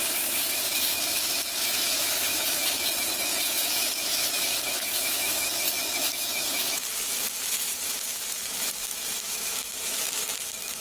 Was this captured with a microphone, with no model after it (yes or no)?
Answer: no